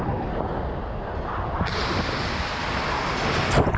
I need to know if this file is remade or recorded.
recorded